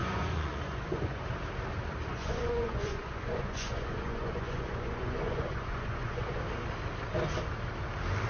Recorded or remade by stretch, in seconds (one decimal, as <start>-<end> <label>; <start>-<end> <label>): 0.0-1.2 remade; 1.2-2.1 recorded; 2.1-6.4 remade; 6.4-8.3 recorded

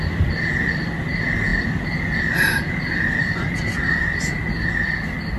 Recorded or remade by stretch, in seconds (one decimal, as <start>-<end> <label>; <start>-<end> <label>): 0.0-5.4 recorded

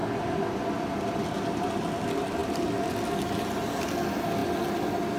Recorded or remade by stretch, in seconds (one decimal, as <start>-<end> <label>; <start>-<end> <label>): 0.0-5.2 recorded